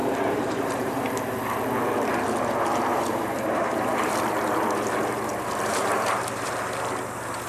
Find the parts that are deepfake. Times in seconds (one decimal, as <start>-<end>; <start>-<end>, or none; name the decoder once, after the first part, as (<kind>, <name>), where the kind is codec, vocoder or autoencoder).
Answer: 0.0-1.1 (vocoder, BigVGAN v2); 2.9-4.1; 5.3-6.5